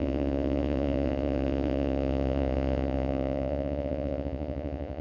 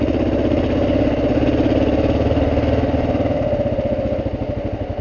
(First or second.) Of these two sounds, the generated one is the first